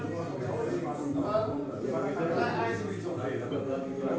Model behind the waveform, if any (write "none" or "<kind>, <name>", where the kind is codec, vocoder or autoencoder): none